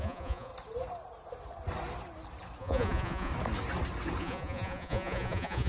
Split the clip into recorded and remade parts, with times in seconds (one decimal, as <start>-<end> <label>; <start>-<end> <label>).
0.0-0.5 remade; 0.5-2.6 recorded; 2.6-3.3 remade; 3.3-4.2 recorded; 4.2-5.7 remade